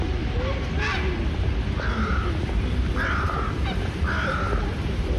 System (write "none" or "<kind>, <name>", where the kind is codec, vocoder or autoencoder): none